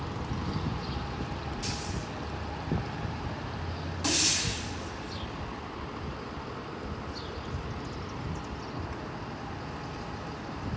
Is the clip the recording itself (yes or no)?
yes